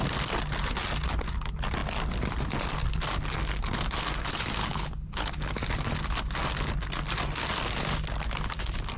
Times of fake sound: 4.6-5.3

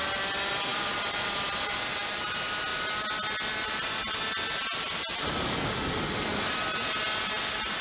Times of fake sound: none

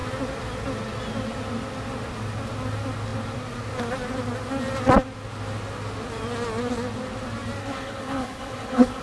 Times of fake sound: 7.6-9.0

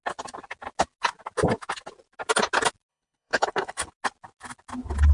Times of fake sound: 2.9-3.9

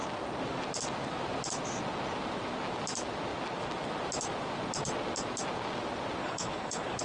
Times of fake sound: 6.2-7.0

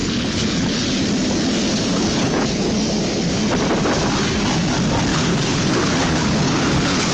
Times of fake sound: 0.0-0.9; 1.7-2.7; 5.1-7.1